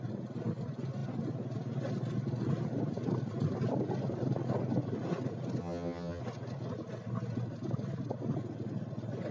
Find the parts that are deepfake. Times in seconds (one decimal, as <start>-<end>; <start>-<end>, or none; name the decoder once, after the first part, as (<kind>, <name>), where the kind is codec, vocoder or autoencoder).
5.6-6.2 (vocoder, HiFi-GAN)